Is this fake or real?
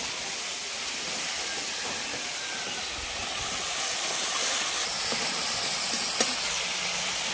real